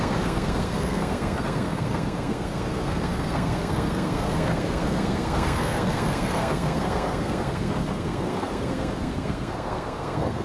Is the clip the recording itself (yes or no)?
no